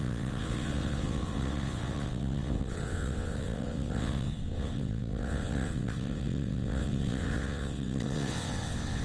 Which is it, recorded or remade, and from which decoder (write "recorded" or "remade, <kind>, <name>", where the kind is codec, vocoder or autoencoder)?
remade, vocoder, WaveNeXt